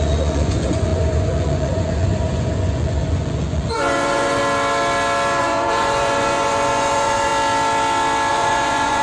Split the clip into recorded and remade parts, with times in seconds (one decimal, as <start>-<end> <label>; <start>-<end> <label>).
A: 0.0-4.4 remade; 4.4-5.4 recorded; 5.4-7.3 remade; 7.3-8.3 recorded; 8.3-9.0 remade